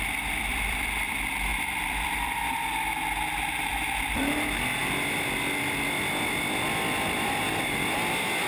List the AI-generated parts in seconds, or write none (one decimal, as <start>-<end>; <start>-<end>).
0.5-1.1; 1.5-2.4; 3.7-4.2